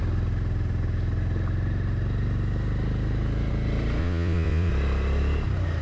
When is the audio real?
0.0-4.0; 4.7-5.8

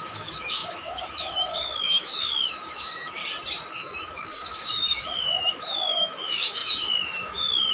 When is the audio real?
3.2-3.7

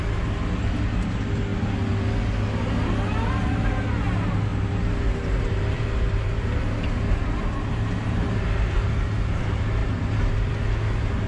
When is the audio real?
0.0-4.5; 8.7-9.8; 10.5-11.3